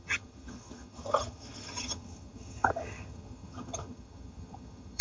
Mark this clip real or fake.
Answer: fake